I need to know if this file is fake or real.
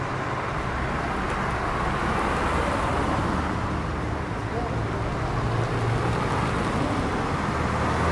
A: real